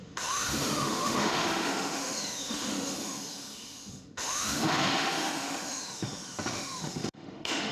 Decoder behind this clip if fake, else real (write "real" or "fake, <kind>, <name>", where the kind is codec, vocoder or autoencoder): fake, autoencoder, DAC-VAE